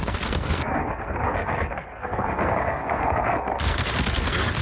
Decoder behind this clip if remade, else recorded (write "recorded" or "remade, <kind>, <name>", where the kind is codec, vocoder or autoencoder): remade, codec, SNAC